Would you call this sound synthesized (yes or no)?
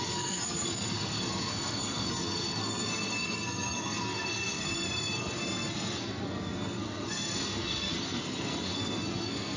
yes